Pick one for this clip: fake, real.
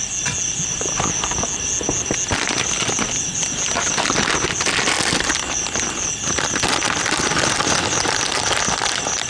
real